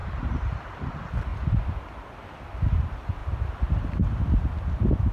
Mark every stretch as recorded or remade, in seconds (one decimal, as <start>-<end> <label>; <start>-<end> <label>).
0.0-0.9 remade; 0.9-5.1 recorded